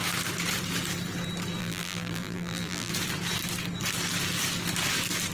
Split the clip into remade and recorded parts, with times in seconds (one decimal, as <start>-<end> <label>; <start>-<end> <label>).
0.0-1.6 recorded; 1.6-2.9 remade; 2.9-5.3 recorded